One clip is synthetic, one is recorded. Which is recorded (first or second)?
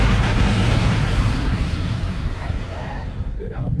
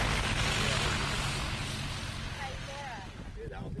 second